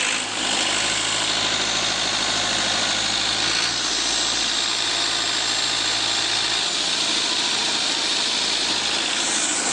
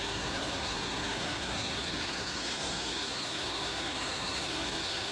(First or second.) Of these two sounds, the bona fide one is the first